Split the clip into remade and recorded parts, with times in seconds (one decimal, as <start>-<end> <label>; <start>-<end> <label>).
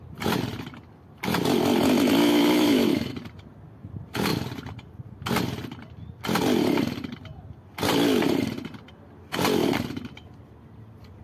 0.0-2.2 recorded; 2.2-3.1 remade; 3.1-11.2 recorded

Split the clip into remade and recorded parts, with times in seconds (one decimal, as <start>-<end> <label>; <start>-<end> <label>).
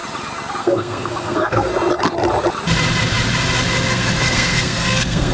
0.0-0.6 recorded; 0.6-1.7 remade; 1.7-3.9 recorded; 3.9-5.3 remade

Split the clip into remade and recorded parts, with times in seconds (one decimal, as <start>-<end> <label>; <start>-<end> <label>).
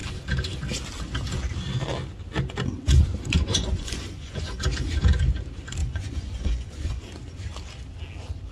0.0-3.5 recorded; 3.5-4.6 remade; 4.6-5.8 recorded; 5.8-7.0 remade; 7.0-8.5 recorded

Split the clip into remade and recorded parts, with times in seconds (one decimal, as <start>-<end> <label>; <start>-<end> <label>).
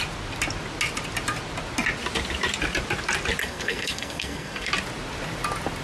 0.0-3.4 recorded; 3.4-4.7 remade; 4.7-5.8 recorded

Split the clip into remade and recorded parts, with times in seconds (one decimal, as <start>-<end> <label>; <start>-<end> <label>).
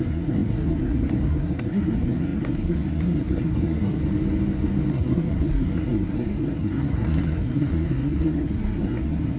0.0-4.0 remade; 4.0-4.9 recorded; 4.9-9.4 remade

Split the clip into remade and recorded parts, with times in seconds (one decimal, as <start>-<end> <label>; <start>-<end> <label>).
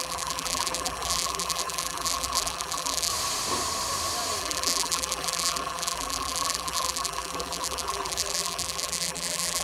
0.0-3.1 remade; 3.1-4.4 recorded; 4.4-9.6 remade